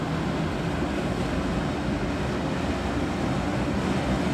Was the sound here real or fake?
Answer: real